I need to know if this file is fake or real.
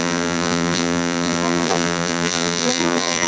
fake